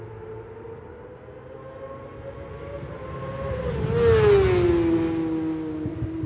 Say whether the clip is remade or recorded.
recorded